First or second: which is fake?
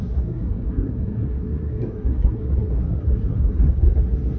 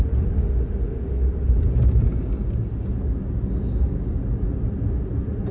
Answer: first